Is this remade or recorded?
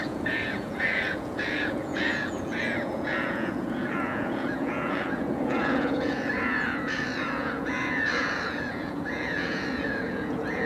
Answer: remade